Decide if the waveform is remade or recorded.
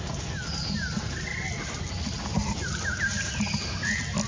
recorded